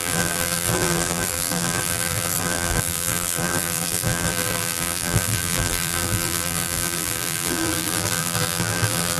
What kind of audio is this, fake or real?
fake